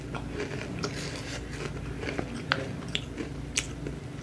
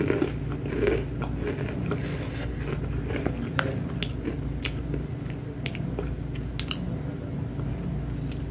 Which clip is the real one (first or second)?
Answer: second